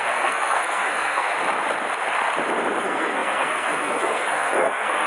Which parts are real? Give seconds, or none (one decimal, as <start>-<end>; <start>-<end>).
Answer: 1.3-2.8